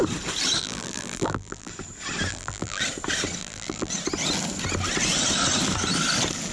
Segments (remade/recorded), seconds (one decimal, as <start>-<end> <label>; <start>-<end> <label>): 0.0-0.6 recorded; 0.6-1.7 remade; 1.7-2.3 recorded; 2.3-2.8 remade; 2.8-3.4 recorded; 3.4-3.9 remade; 3.9-6.5 recorded